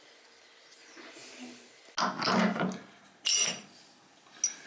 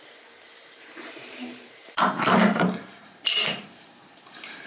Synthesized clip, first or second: second